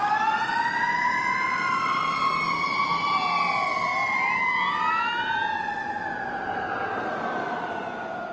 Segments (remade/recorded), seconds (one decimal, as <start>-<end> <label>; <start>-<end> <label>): 0.0-8.3 recorded